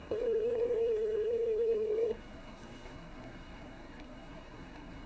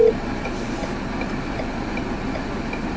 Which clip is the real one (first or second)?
second